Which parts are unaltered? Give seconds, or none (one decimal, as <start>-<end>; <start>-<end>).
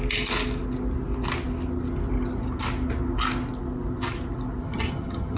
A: 0.0-4.6